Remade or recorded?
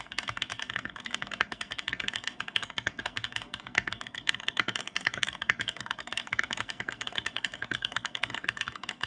remade